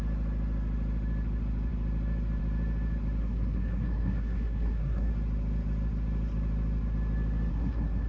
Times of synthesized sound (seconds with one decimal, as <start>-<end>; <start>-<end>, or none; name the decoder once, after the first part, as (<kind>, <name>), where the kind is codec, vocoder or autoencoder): 3.2-5.1 (codec, SNAC); 7.5-8.1